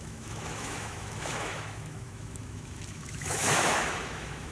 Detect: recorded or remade remade